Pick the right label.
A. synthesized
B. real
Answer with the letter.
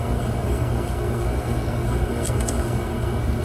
A